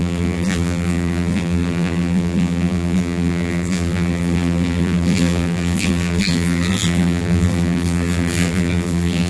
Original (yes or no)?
no